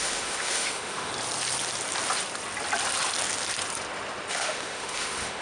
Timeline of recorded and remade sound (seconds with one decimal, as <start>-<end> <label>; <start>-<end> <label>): 0.0-1.1 remade; 1.1-4.3 recorded; 4.3-5.4 remade